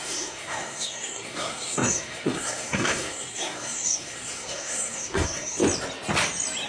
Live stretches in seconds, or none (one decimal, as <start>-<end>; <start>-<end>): 5.6-6.7